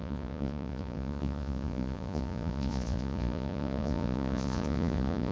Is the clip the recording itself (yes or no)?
no